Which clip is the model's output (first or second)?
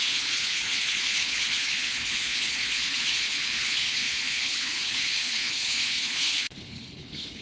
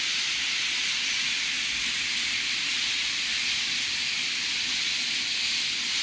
first